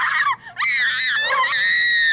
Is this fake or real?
real